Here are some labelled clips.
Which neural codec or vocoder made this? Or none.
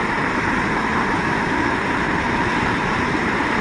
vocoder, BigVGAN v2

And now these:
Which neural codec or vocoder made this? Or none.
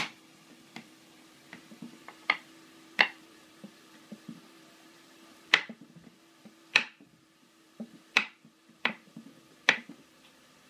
vocoder, BigVGAN v2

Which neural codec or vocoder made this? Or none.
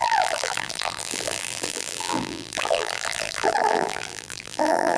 vocoder, BigVGAN v2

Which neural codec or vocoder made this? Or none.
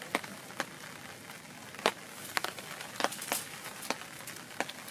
none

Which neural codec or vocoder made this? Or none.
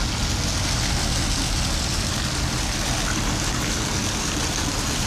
none